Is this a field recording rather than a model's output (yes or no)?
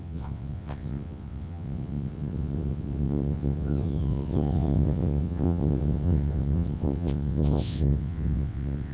no